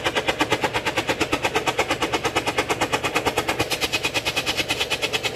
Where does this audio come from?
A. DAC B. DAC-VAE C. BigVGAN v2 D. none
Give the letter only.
D